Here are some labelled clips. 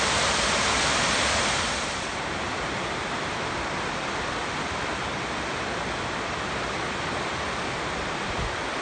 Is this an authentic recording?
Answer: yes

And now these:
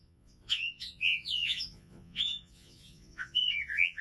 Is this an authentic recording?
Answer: no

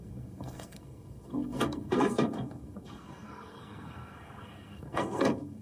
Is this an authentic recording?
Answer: no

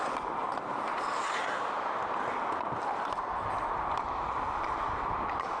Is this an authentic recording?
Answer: yes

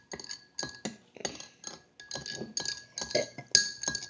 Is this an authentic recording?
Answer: yes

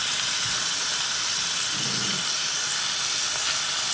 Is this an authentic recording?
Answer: yes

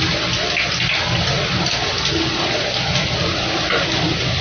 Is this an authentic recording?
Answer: yes